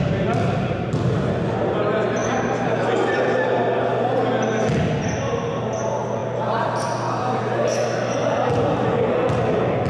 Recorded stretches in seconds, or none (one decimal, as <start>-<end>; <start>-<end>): 0.0-2.2; 3.6-6.2; 7.4-8.2; 9.0-9.9